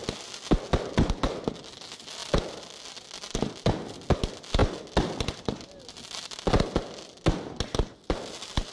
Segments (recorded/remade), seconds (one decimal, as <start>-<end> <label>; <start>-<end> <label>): 0.0-8.7 recorded